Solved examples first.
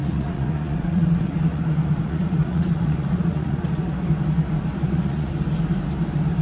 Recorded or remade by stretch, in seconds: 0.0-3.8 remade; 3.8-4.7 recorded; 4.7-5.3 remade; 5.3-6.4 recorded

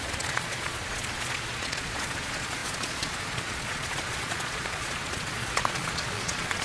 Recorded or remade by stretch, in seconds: 0.0-6.6 remade